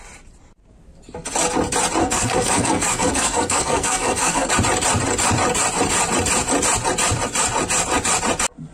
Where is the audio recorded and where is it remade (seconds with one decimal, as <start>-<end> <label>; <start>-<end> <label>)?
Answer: 0.0-2.0 recorded; 2.0-4.5 remade; 4.5-8.7 recorded